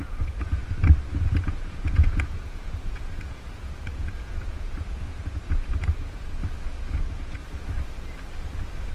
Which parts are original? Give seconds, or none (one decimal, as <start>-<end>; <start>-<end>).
0.6-1.1; 6.4-7.0; 7.4-8.9